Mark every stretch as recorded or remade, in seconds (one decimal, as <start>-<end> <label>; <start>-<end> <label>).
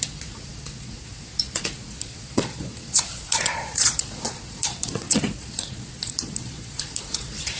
0.0-7.6 remade